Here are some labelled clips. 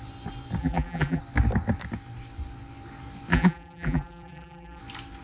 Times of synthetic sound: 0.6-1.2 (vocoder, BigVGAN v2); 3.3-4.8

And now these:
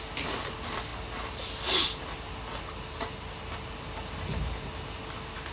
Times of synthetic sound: none

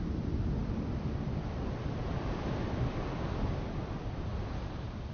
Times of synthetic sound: 0.0-5.1 (vocoder, BigVGAN v2)

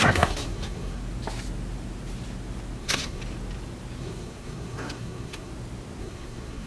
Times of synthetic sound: 0.0-1.0 (codec, SNAC); 2.8-3.2; 4.0-5.5; 6.0-6.7